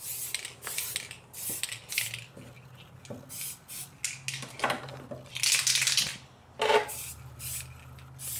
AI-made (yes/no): no